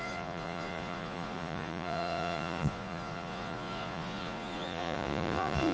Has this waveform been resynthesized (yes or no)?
yes